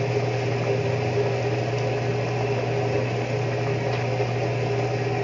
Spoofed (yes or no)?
no